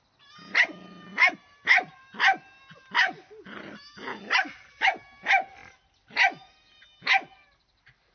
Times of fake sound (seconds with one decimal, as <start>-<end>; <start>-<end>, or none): 1.1-2.0